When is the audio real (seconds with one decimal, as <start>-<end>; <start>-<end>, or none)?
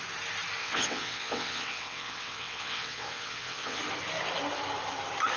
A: 0.0-0.6; 3.8-5.4